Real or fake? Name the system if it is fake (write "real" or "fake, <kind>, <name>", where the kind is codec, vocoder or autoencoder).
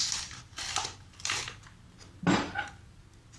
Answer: real